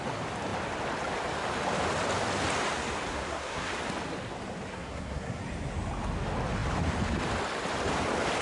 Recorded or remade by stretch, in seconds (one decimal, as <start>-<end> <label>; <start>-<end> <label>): 0.0-3.1 recorded; 3.1-3.7 remade; 3.7-4.7 recorded; 4.7-5.4 remade; 5.4-8.4 recorded